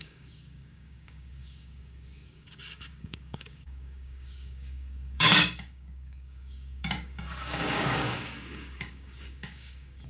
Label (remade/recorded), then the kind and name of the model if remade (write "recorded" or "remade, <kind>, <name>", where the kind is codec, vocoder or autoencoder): remade, codec, DAC